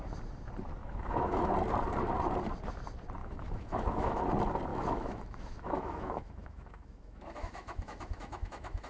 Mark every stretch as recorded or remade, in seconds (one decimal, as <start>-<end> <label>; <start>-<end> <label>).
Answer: 0.0-0.8 recorded; 0.8-1.5 remade; 1.5-3.2 recorded; 3.2-4.2 remade; 4.2-4.7 recorded; 4.7-8.9 remade